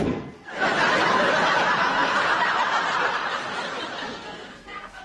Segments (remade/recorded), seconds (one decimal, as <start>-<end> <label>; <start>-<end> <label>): 0.0-0.5 remade; 0.5-4.1 recorded; 4.1-5.0 remade